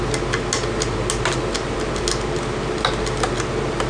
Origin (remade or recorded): recorded